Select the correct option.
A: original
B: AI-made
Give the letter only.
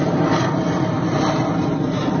B